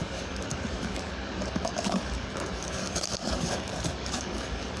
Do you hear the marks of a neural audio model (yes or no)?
yes